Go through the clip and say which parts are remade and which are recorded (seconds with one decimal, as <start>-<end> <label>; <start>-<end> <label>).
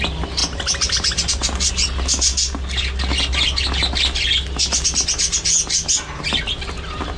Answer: 0.0-7.2 recorded